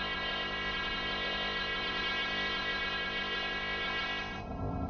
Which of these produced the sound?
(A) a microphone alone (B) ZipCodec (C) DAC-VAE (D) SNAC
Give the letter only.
B